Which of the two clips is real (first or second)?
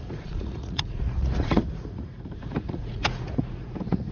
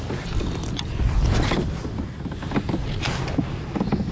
second